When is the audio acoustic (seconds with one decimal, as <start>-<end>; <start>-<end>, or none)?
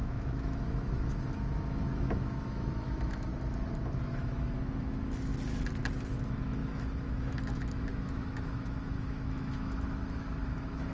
3.3-4.1; 5.3-5.9